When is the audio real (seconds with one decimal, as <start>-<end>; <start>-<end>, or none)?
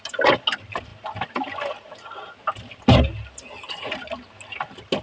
0.0-5.0